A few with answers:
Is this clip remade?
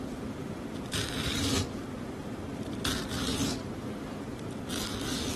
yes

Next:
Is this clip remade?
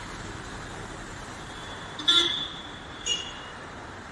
yes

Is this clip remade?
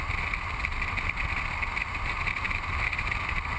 no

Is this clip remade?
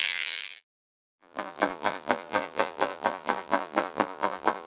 yes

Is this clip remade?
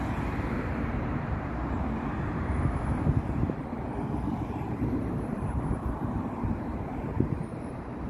yes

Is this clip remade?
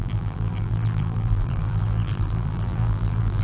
yes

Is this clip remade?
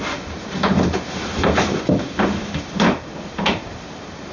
yes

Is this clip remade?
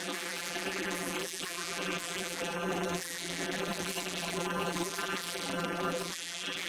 yes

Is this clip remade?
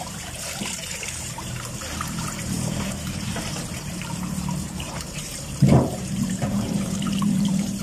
yes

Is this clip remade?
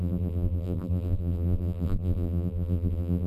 yes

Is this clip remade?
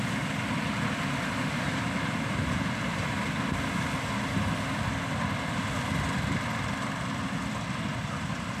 no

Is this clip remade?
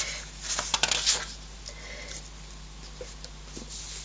no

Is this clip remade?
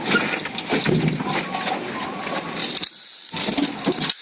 no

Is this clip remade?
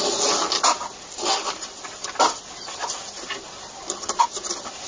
no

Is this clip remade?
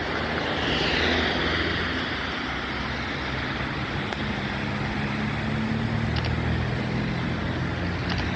no